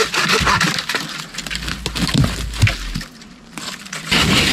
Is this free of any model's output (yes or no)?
yes